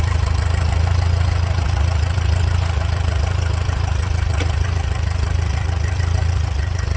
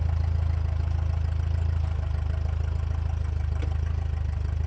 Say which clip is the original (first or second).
second